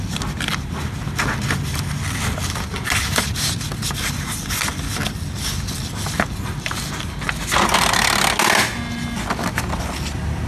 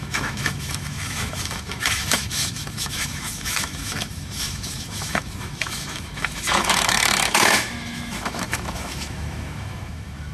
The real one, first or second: first